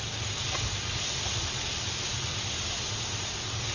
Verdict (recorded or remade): recorded